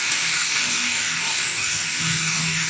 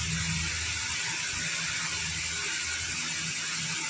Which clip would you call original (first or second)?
second